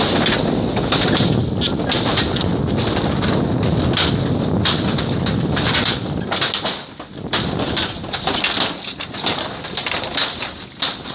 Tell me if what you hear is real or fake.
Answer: real